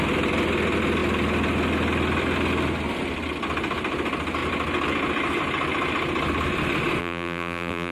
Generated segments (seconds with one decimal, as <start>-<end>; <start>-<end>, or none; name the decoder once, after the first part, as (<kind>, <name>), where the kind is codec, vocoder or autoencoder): 7.0-7.9 (vocoder, BigVGAN v2)